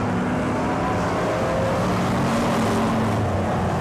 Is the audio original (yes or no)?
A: yes